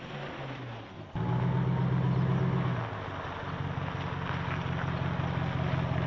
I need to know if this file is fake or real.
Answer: real